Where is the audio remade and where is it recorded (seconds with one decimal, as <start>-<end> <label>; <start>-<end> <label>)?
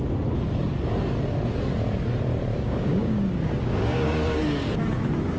0.0-2.5 recorded; 2.5-4.8 remade; 4.8-5.4 recorded